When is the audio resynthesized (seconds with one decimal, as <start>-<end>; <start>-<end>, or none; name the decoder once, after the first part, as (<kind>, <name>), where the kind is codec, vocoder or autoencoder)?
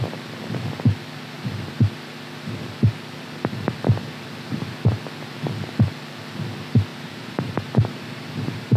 6.9-8.8 (vocoder, BigVGAN v2)